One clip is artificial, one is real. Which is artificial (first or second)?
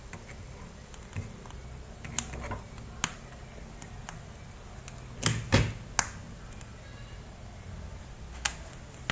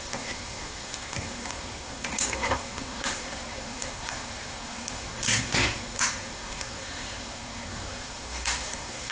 second